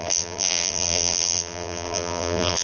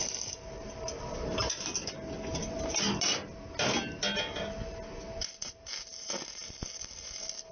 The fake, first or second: first